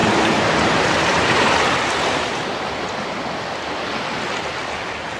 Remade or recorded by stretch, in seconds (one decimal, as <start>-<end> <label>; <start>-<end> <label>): 0.0-1.6 remade; 1.6-5.2 recorded